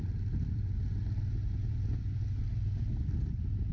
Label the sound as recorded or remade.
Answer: recorded